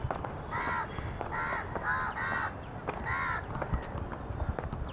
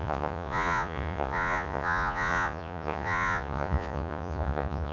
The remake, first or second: second